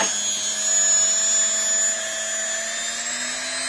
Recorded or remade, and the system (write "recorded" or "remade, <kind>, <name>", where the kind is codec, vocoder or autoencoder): recorded